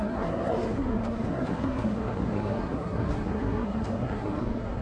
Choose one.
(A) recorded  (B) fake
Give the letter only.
B